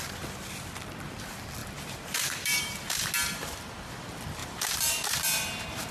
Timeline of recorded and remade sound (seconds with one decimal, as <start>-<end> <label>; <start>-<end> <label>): 0.0-1.6 recorded; 1.6-3.1 remade; 3.1-4.4 recorded; 4.4-5.9 remade